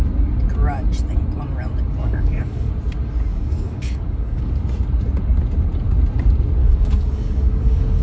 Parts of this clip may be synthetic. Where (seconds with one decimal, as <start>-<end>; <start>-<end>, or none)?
2.0-2.7; 3.3-4.5; 6.6-8.0